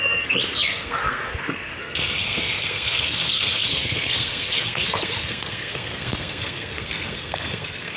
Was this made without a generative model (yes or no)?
no